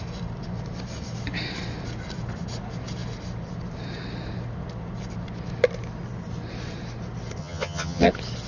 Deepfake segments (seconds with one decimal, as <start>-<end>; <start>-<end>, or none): 7.4-8.1